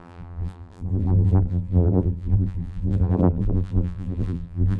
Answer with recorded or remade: remade